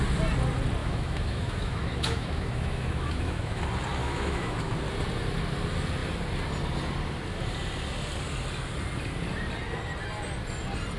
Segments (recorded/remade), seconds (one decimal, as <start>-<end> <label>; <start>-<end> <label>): 0.0-0.8 recorded; 0.8-3.6 remade; 3.6-4.0 recorded; 4.0-4.7 remade; 4.7-11.0 recorded

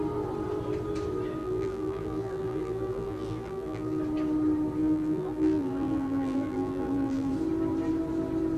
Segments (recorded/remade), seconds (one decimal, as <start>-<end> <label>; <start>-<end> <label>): 0.0-1.4 recorded; 1.4-4.0 remade; 4.0-4.8 recorded; 4.8-7.3 remade; 7.3-8.6 recorded

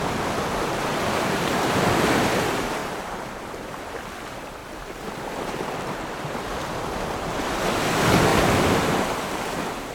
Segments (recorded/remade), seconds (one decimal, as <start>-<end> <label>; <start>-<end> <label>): 0.0-0.9 recorded; 0.9-1.8 remade; 1.8-2.8 recorded; 2.8-3.4 remade; 3.4-8.3 recorded; 8.3-9.9 remade

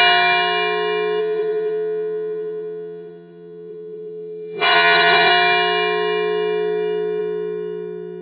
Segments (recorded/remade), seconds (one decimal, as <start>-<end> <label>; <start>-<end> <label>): 0.0-1.2 recorded; 1.2-5.3 remade; 5.3-8.2 recorded